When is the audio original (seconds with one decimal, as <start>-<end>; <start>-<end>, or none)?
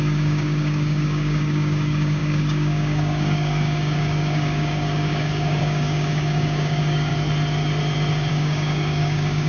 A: 7.1-8.3